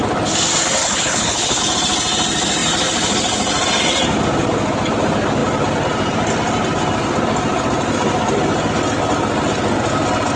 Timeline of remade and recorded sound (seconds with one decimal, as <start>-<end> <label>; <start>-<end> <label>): 0.0-0.8 recorded; 0.8-1.6 remade; 1.6-10.4 recorded